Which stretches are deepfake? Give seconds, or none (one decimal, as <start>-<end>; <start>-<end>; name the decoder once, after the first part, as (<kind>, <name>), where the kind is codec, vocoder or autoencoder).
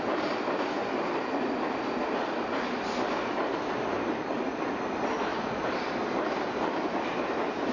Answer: none